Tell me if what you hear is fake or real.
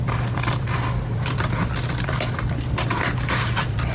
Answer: fake